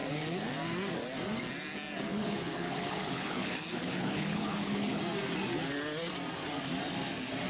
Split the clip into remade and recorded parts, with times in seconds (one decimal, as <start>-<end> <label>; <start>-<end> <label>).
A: 0.0-2.1 recorded; 2.1-5.0 remade; 5.0-7.5 recorded